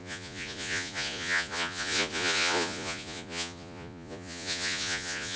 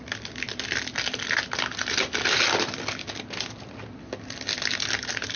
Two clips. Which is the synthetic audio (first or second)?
first